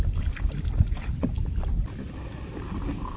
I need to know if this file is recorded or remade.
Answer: recorded